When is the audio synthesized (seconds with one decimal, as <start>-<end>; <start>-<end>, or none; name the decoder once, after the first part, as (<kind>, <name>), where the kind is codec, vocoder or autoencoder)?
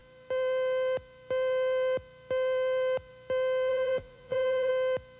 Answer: 3.7-4.7 (vocoder, Vocos)